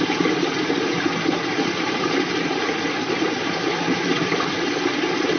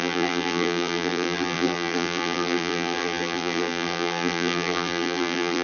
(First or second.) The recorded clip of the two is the first